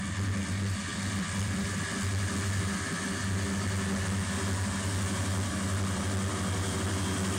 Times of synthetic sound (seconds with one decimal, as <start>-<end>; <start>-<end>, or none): 0.9-2.6; 5.2-6.0